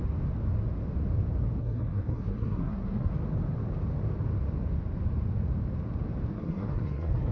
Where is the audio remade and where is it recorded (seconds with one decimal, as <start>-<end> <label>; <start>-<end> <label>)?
0.0-1.6 recorded; 1.6-3.1 remade; 3.1-6.3 recorded; 6.3-7.3 remade